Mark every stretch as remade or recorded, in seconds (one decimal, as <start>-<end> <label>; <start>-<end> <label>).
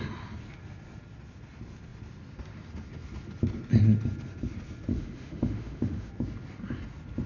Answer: 0.0-4.9 recorded; 4.9-6.1 remade; 6.1-7.3 recorded